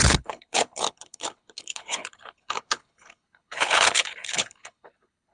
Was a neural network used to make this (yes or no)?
yes